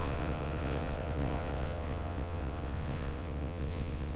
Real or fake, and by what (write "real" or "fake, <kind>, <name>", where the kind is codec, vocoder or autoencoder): fake, vocoder, WaveNeXt